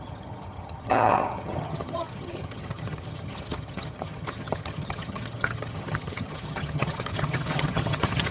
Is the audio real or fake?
fake